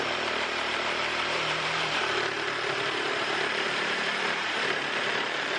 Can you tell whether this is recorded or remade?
remade